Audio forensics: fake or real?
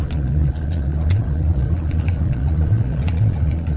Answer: fake